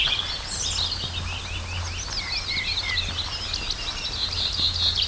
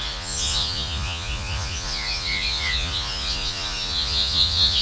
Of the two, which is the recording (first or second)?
first